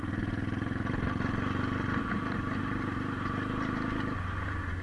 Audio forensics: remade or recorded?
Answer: recorded